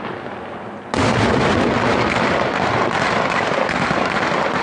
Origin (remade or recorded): recorded